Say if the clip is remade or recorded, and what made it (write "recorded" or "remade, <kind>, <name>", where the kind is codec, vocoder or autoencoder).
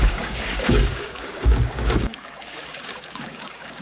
remade, codec, DAC